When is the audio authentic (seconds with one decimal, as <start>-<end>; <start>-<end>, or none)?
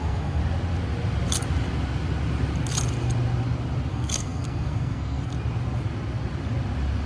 0.4-3.9; 5.3-7.1